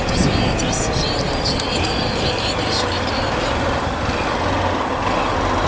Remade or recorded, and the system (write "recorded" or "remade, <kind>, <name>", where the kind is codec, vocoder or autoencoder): recorded